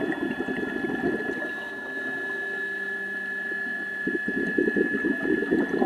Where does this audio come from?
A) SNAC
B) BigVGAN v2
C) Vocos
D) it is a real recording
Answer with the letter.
D